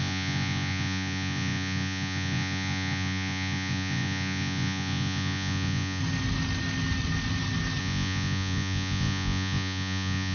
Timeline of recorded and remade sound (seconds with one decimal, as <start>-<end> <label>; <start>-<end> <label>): 0.0-6.0 remade; 6.0-7.8 recorded; 7.8-10.3 remade